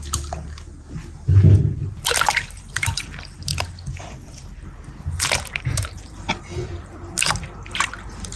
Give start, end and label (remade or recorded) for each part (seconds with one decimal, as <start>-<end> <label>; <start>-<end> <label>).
0.0-2.4 recorded; 2.4-3.5 remade; 3.5-4.0 recorded; 4.0-4.4 remade; 4.4-5.5 recorded; 5.5-8.4 remade